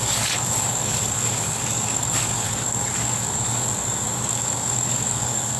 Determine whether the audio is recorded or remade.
remade